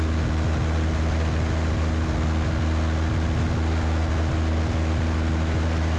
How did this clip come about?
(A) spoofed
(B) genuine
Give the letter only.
B